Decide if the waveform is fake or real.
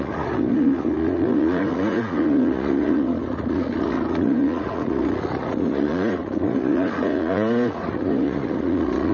fake